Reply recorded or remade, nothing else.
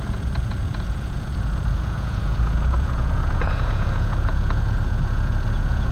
remade